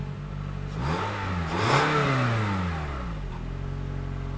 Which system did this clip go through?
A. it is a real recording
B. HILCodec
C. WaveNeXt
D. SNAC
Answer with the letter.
A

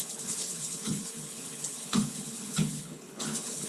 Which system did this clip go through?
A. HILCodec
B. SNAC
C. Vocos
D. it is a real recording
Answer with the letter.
A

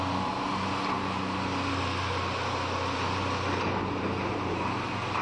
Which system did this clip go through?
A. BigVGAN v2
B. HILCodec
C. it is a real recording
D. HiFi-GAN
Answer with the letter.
C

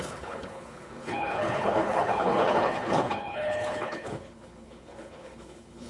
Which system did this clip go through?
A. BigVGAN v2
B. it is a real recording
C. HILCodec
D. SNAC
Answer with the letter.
C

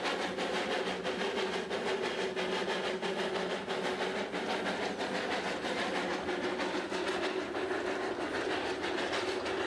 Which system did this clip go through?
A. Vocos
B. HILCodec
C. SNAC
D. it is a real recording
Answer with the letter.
D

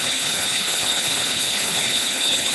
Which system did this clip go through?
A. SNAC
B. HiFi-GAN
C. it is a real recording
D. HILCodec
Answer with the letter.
D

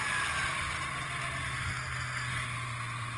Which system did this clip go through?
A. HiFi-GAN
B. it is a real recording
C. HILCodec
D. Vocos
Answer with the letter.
B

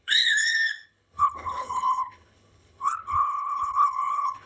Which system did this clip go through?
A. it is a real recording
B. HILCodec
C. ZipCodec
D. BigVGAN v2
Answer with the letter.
B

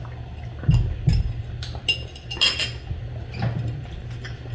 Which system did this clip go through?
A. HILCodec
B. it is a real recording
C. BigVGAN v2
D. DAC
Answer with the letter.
B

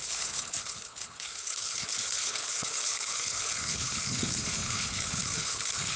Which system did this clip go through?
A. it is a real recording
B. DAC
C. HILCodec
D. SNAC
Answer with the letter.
C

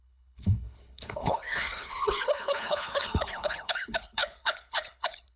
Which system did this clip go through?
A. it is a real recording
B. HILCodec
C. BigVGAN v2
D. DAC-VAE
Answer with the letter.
B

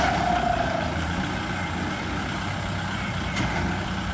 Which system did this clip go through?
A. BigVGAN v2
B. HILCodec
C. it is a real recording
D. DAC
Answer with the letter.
C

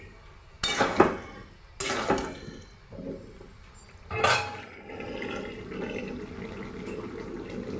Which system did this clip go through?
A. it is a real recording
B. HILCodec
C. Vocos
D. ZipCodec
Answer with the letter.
A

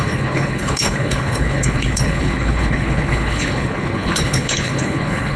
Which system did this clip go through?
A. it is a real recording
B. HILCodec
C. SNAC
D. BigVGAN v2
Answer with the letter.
B